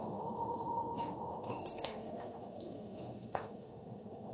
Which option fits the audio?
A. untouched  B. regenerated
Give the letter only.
B